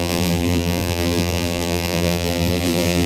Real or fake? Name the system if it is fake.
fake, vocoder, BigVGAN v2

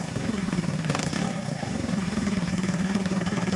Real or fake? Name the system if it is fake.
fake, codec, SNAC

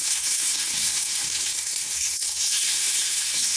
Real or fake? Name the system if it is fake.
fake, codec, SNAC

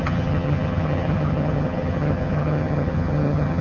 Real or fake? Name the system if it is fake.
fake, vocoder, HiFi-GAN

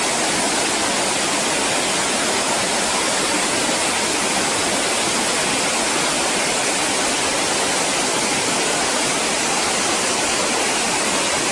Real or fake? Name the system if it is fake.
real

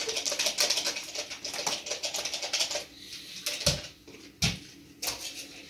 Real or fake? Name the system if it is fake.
real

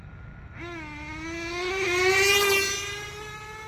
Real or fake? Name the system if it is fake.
real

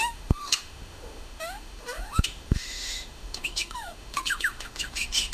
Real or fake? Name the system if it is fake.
fake, autoencoder, DAC-VAE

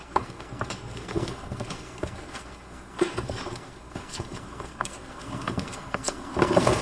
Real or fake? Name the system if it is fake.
fake, codec, SNAC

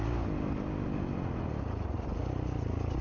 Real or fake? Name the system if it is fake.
real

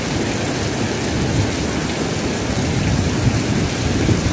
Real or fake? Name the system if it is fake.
real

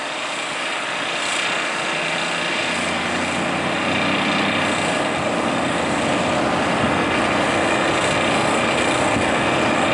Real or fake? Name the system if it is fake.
real